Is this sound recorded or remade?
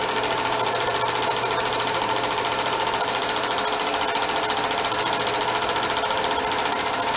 recorded